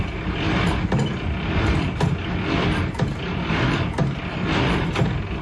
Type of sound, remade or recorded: recorded